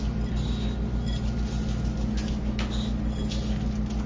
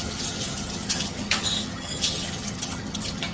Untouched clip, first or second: first